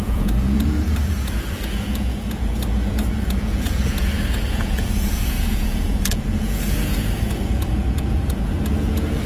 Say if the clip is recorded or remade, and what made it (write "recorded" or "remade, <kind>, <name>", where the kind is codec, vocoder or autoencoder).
remade, vocoder, Vocos